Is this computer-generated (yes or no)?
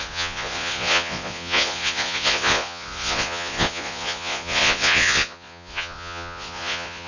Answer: yes